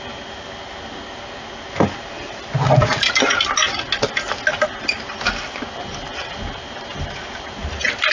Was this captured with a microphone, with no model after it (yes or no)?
yes